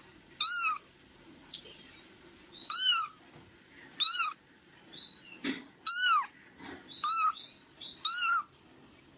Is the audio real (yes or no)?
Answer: yes